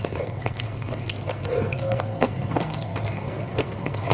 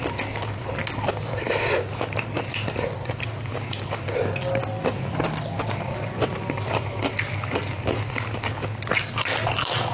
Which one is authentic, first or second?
second